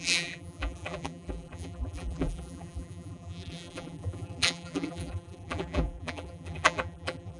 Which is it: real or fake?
fake